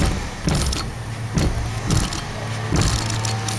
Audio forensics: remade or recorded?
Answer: recorded